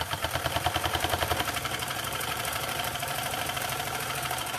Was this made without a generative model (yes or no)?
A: no